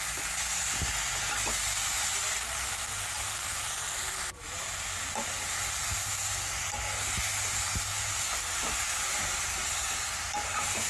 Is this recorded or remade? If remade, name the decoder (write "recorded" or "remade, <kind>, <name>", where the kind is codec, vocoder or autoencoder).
recorded